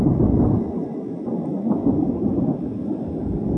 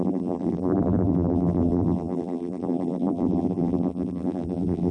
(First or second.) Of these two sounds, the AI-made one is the second